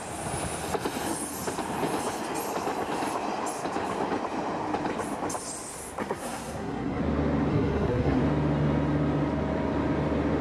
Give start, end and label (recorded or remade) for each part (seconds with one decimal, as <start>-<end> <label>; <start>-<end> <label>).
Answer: 0.0-6.0 recorded; 6.0-7.0 remade; 7.0-7.5 recorded; 7.5-8.2 remade; 8.2-10.4 recorded